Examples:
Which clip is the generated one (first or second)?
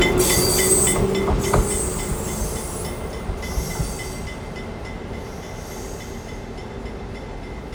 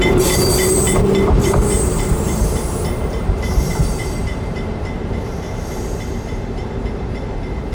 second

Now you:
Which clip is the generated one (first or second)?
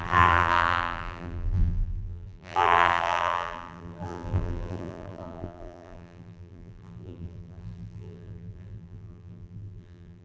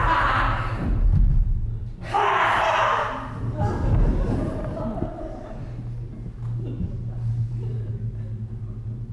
first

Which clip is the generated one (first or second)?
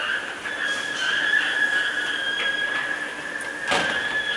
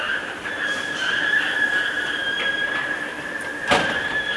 second